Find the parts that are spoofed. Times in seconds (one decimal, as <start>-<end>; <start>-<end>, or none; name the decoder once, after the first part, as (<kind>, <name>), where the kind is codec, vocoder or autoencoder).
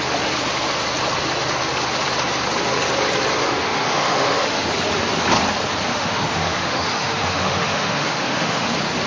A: 3.4-4.7 (autoencoder, DAC-VAE); 5.9-8.7